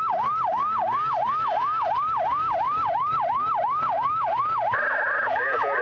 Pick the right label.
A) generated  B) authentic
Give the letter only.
B